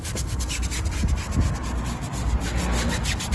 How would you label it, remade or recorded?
recorded